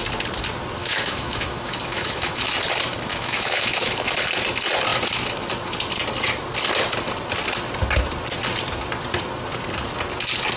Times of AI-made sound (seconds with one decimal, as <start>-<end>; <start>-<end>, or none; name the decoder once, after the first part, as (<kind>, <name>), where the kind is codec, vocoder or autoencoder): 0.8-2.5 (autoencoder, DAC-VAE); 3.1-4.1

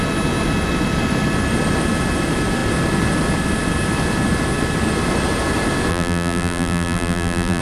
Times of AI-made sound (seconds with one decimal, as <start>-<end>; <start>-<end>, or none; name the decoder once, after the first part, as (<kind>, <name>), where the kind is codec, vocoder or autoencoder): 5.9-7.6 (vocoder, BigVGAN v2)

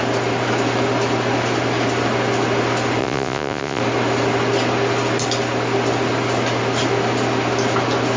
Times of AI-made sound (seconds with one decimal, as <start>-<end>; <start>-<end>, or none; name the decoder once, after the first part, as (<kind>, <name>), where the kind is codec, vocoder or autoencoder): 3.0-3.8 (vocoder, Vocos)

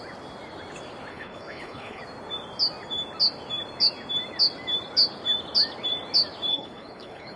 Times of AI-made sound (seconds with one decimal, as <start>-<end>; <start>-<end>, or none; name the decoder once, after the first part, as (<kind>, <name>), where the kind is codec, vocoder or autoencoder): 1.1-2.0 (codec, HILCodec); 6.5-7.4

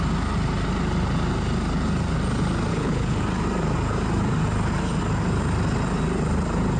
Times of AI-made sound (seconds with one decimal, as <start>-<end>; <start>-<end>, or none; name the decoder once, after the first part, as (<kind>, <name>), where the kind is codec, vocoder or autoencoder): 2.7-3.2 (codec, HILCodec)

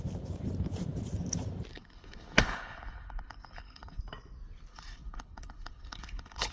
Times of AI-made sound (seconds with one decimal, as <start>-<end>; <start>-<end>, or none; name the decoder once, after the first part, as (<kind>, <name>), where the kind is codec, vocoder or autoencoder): 1.7-4.0 (codec, HILCodec); 4.7-6.5

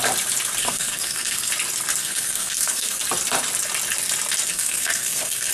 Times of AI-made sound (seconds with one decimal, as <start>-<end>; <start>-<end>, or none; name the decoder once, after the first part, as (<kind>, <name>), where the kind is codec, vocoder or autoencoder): 0.6-1.5 (codec, SNAC); 2.0-3.0; 4.5-5.5